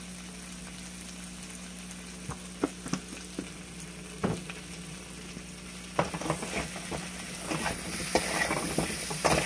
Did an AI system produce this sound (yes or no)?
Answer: no